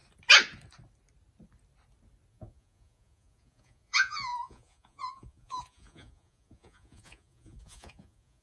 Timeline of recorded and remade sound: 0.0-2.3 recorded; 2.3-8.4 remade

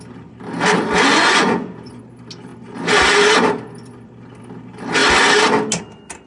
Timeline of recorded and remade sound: 0.0-1.1 recorded; 1.1-2.0 remade; 2.0-6.3 recorded

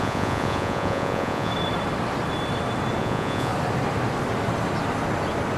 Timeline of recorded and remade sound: 0.0-1.5 remade; 1.5-3.0 recorded; 3.0-3.5 remade; 3.5-5.6 recorded

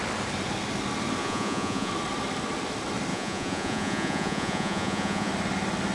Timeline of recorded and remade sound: 0.0-1.2 recorded; 1.2-1.9 remade; 1.9-3.1 recorded; 3.1-5.3 remade; 5.3-5.9 recorded

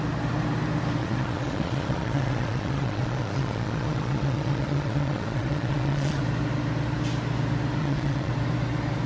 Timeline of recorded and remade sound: 0.0-1.0 recorded; 1.0-6.2 remade; 6.2-7.8 recorded; 7.8-8.3 remade; 8.3-9.1 recorded

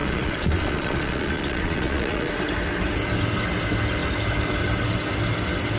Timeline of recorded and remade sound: 0.0-2.3 remade; 2.3-5.8 recorded